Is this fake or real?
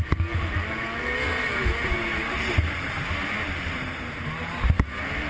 real